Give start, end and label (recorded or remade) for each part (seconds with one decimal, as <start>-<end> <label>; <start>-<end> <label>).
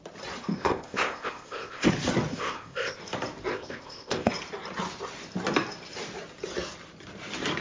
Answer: 0.0-0.5 recorded; 0.5-1.9 remade; 1.9-2.3 recorded; 2.3-3.0 remade; 3.0-3.5 recorded; 3.5-4.3 remade; 4.3-7.6 recorded